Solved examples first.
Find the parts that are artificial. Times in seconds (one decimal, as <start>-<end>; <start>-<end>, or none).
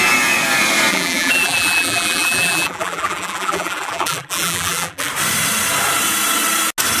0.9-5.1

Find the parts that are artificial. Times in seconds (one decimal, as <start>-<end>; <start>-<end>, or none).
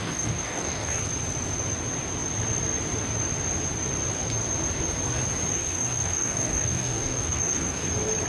0.0-1.0; 5.5-7.9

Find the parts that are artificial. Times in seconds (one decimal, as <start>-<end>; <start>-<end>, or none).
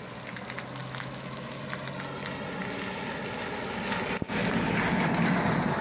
0.8-1.6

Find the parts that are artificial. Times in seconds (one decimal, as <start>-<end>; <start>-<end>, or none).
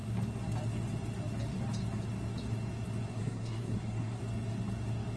3.1-4.2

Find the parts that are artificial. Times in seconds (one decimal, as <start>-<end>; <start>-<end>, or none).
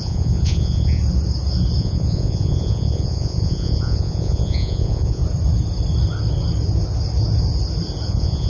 0.0-1.0; 1.8-5.2; 8.1-8.5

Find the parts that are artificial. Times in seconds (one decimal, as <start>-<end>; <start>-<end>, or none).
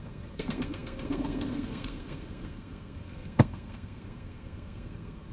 0.0-5.3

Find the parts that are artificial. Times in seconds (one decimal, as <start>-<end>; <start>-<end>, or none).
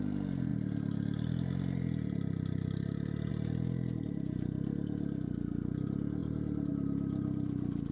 none